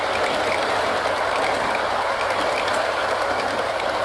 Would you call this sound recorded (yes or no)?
yes